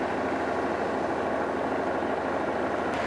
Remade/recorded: recorded